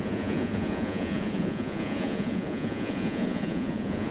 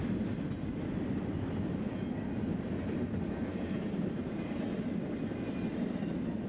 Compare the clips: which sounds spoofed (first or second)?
first